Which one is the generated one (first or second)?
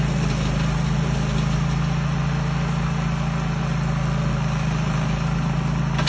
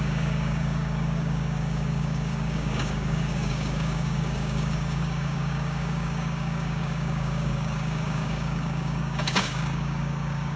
second